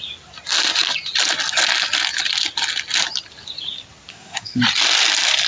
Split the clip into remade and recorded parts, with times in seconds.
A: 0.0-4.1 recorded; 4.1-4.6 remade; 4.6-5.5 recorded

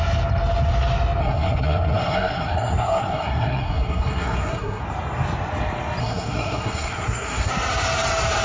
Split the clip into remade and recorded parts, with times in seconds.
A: 0.0-1.2 recorded; 1.2-4.8 remade; 4.8-6.0 recorded; 6.0-7.5 remade; 7.5-8.4 recorded

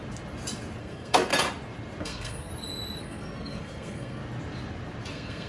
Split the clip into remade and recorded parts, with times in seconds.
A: 0.0-0.8 recorded; 0.8-1.3 remade; 1.3-2.0 recorded; 2.0-2.5 remade; 2.5-3.0 recorded; 3.0-4.2 remade; 4.2-5.1 recorded; 5.1-5.5 remade

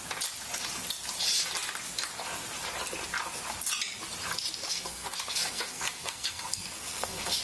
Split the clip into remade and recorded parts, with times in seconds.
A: 0.0-4.6 recorded; 4.6-7.4 remade

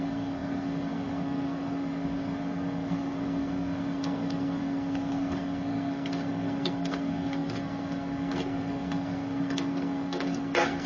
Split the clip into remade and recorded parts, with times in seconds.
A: 0.0-10.9 remade